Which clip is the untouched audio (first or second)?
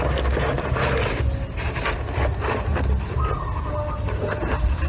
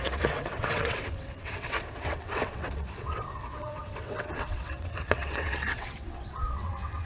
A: first